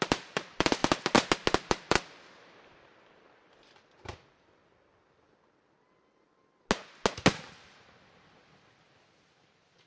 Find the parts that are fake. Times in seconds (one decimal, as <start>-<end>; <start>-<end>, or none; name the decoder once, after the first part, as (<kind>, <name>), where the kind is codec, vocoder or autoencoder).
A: 0.0-0.8 (vocoder, BigVGAN v2); 1.7-4.6; 9.1-9.9